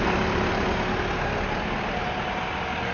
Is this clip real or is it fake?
real